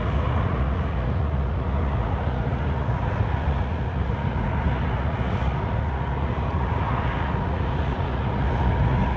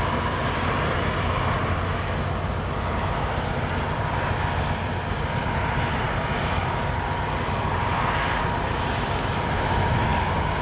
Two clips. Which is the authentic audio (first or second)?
second